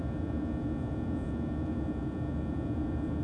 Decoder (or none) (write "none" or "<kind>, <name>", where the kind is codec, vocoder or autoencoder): vocoder, Vocos